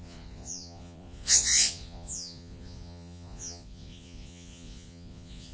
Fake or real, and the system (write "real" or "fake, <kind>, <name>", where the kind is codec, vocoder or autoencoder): fake, vocoder, Vocos